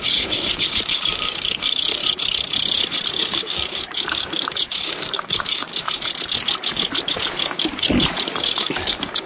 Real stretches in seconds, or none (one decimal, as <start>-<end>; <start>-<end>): 2.0-3.1; 5.7-7.0